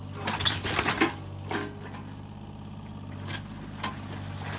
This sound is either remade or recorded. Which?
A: recorded